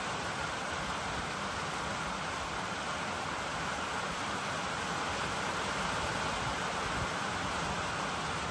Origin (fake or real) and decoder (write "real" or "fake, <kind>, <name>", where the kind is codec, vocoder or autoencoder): real